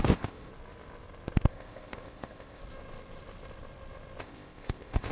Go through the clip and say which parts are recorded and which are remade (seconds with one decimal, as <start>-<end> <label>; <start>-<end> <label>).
0.0-0.5 remade; 0.5-1.5 recorded; 1.5-2.6 remade; 2.6-4.2 recorded; 4.2-5.1 remade